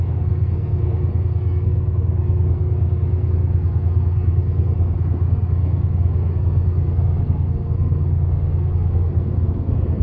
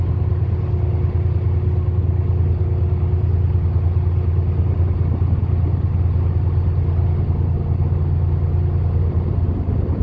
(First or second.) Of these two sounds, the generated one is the first